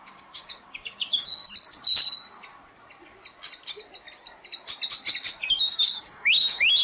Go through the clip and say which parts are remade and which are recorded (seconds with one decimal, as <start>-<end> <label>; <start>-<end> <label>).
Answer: 0.0-1.4 remade; 1.4-5.5 recorded; 5.5-6.8 remade

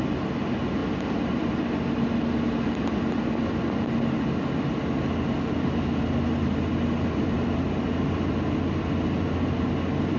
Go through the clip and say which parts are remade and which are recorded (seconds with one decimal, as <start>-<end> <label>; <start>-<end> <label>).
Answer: 0.0-10.2 recorded

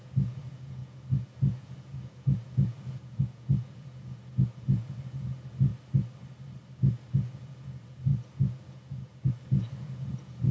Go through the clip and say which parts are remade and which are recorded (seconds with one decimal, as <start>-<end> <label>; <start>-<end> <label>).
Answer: 0.0-5.7 remade; 5.7-6.8 recorded; 6.8-10.5 remade

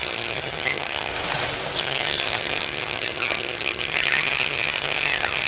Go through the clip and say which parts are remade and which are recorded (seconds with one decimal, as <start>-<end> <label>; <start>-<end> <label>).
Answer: 0.0-1.1 remade; 1.1-1.8 recorded; 1.8-5.5 remade

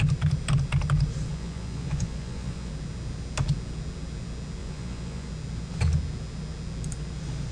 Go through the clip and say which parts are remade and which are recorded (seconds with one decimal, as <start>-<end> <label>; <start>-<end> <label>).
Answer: 0.0-1.3 recorded; 1.3-2.7 remade; 2.7-4.6 recorded; 4.6-5.3 remade; 5.3-7.5 recorded

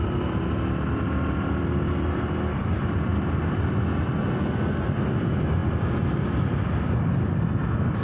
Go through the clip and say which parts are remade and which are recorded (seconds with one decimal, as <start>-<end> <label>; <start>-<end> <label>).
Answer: 0.0-8.0 recorded